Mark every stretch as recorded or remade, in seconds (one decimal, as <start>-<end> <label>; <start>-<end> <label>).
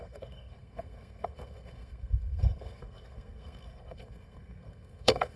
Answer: 0.0-5.4 remade